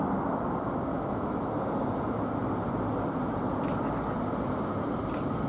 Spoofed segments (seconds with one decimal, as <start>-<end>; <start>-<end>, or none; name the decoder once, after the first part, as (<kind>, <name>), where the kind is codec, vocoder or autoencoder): 0.9-1.5 (autoencoder, DAC-VAE)